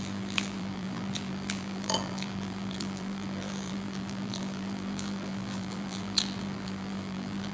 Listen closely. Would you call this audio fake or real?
fake